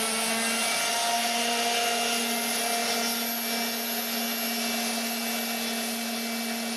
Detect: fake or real real